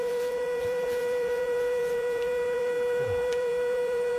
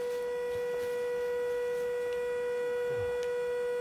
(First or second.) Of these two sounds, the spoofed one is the first